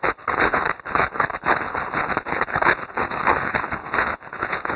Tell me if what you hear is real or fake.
fake